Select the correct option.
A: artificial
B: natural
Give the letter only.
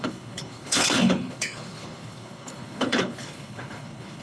A